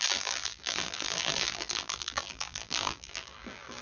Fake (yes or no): yes